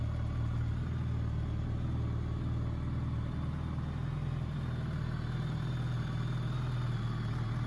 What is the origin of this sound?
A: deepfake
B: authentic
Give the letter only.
B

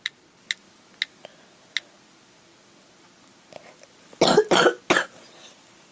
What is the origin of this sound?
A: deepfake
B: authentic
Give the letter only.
B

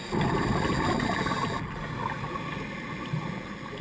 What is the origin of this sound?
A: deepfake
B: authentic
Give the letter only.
B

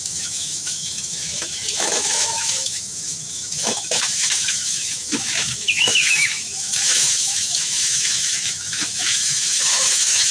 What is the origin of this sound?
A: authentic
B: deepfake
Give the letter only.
B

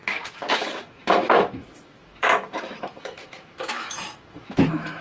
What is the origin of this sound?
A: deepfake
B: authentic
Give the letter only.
A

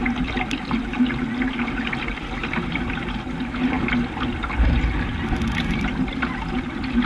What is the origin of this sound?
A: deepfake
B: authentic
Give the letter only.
B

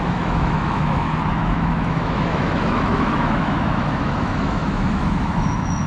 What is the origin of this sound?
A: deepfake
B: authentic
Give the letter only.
A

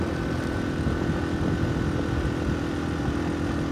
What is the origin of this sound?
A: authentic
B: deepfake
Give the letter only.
A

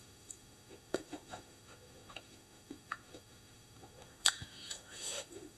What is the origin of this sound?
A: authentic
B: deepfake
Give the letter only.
B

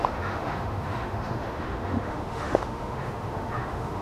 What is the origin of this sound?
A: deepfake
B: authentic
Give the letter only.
A